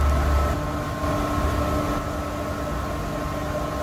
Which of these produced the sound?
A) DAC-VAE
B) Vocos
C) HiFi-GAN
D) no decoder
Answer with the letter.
D